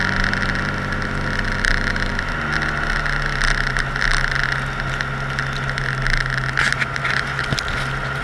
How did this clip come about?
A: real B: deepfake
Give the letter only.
A